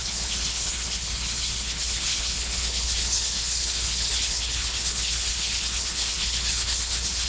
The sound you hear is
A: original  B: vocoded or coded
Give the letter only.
B